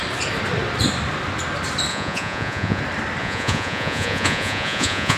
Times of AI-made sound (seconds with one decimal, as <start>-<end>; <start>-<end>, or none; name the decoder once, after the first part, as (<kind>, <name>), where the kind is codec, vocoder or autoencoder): 1.9-2.8 (vocoder, Vocos); 3.2-5.2